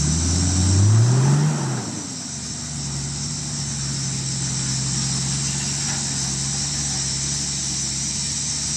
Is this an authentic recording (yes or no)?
yes